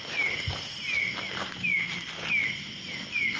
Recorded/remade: recorded